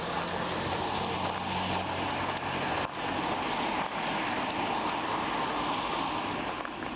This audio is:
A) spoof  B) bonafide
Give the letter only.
B